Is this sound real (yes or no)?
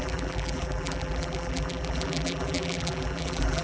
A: no